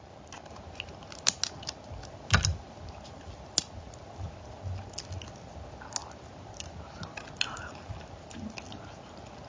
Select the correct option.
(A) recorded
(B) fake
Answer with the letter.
A